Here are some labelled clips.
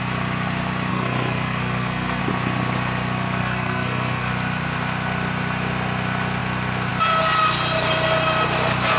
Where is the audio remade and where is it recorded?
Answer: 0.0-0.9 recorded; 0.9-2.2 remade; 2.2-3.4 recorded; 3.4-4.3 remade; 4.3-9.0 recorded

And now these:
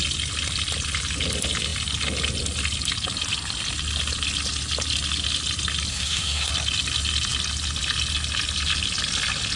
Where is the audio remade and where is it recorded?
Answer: 0.0-5.9 recorded; 5.9-6.5 remade; 6.5-9.6 recorded